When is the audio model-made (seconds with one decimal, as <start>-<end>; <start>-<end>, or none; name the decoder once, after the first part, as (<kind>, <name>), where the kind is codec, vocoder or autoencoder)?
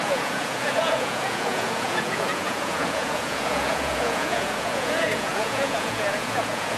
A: 0.0-6.8 (vocoder, Vocos)